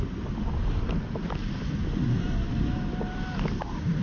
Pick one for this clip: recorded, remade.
recorded